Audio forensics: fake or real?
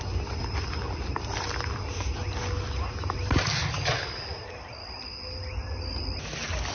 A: real